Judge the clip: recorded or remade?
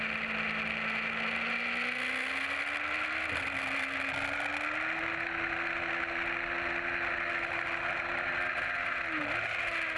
recorded